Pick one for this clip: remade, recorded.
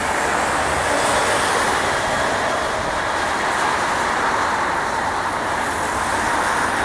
recorded